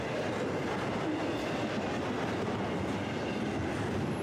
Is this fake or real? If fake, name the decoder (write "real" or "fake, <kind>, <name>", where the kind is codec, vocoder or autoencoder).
real